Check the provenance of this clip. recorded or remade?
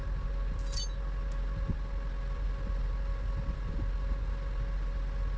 recorded